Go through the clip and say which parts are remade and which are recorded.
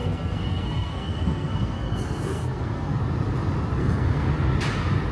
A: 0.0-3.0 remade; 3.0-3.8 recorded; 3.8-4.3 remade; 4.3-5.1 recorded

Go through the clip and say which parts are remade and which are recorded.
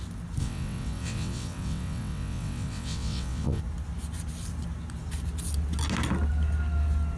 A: 0.0-0.4 recorded; 0.4-3.6 remade; 3.6-7.2 recorded